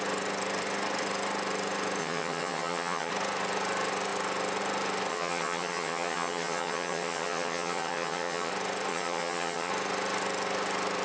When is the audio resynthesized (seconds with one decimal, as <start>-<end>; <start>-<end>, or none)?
2.0-3.1; 5.1-8.5; 8.9-9.7